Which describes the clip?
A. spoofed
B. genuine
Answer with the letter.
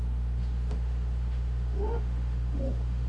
A